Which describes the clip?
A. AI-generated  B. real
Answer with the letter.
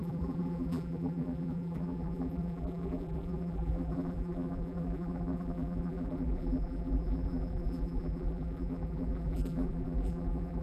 A